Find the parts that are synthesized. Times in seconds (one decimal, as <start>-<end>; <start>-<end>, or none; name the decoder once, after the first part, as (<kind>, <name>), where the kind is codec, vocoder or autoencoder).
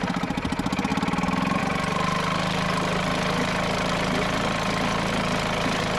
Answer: none